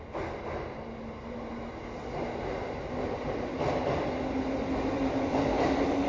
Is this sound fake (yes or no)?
no